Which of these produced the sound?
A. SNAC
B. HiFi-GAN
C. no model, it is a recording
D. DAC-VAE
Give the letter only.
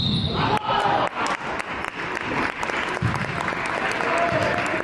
C